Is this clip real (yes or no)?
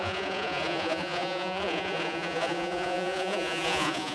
no